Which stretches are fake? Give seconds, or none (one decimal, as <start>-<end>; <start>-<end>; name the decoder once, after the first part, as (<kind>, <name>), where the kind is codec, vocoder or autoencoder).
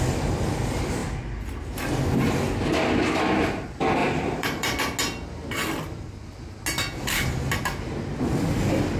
4.0-4.8 (vocoder, BigVGAN v2)